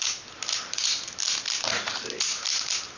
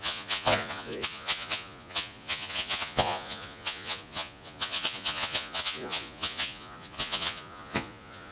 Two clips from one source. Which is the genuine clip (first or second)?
first